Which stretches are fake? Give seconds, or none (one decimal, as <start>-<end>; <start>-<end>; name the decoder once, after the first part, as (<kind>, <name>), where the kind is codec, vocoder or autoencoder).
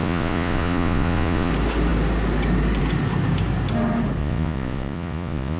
0.0-1.5 (vocoder, Vocos); 4.2-5.6